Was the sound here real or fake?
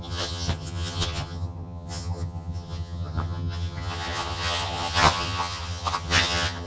fake